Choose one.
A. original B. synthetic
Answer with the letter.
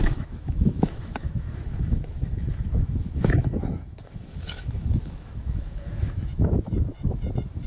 B